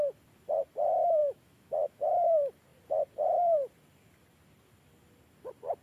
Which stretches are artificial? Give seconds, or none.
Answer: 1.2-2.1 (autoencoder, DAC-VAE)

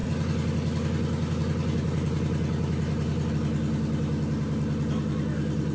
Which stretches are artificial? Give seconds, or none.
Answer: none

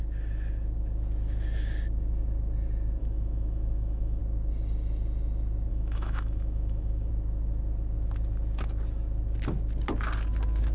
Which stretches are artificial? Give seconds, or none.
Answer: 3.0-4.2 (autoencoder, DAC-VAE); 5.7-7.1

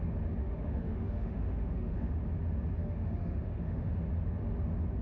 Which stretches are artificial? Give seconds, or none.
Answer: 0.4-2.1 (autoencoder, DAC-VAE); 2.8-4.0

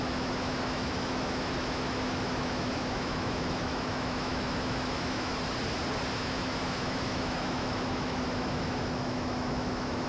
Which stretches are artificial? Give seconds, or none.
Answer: 0.0-5.3 (autoencoder, DAC-VAE); 6.1-10.1

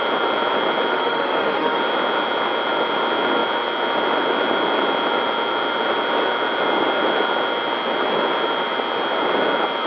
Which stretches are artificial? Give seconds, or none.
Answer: 0.9-1.8 (autoencoder, DAC-VAE)

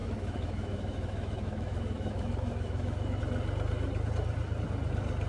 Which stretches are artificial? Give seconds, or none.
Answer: 0.0-3.2 (autoencoder, DAC-VAE)